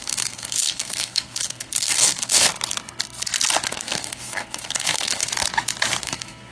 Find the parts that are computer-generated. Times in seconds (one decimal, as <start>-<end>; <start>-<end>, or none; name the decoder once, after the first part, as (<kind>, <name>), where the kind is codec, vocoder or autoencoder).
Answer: 0.0-2.5 (codec, SNAC); 3.7-5.3; 6.0-6.5